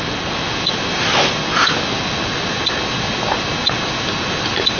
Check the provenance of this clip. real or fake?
real